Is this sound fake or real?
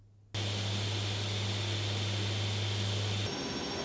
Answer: real